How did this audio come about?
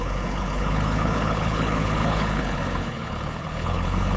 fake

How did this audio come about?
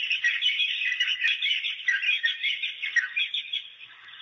real